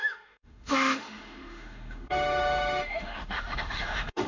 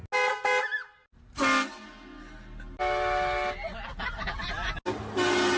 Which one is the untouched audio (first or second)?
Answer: second